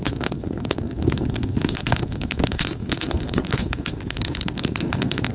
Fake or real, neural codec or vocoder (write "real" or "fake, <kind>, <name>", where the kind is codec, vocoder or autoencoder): fake, codec, SNAC